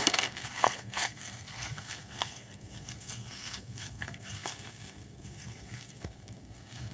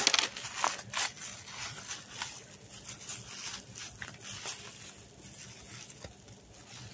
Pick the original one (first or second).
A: second